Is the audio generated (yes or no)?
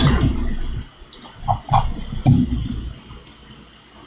no